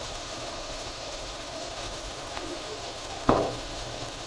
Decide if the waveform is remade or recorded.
remade